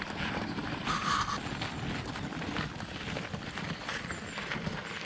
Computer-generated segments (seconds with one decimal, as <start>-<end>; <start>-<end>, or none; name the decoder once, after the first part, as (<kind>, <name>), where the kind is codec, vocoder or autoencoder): none